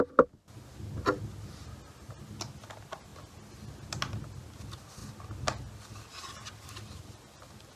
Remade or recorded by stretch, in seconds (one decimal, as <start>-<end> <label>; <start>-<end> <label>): 0.0-7.8 recorded